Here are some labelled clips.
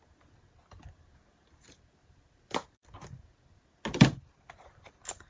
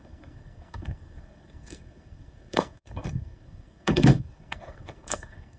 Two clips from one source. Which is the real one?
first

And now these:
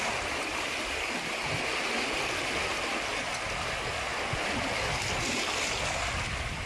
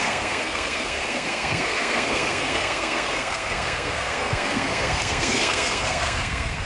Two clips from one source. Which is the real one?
first